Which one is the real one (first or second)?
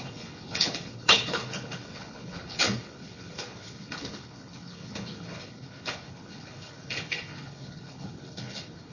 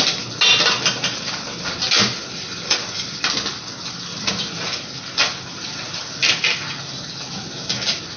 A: second